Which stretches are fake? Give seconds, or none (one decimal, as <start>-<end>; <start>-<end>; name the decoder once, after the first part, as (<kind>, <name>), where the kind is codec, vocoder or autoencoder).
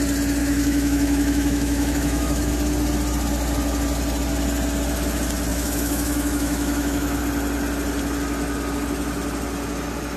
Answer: 0.4-2.5 (autoencoder, DAC-VAE); 5.5-7.2